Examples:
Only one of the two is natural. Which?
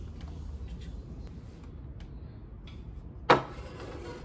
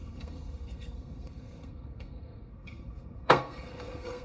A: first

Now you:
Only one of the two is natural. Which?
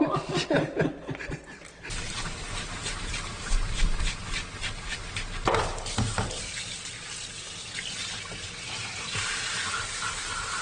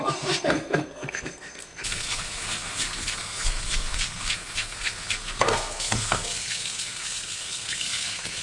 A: first